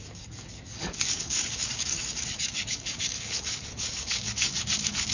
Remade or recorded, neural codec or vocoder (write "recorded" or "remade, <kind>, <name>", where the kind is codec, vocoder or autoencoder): remade, codec, DAC